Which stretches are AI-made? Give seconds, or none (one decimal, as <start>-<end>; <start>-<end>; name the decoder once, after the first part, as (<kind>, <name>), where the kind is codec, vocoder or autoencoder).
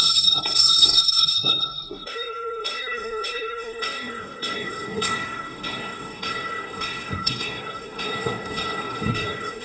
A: 0.0-9.6 (codec, SNAC)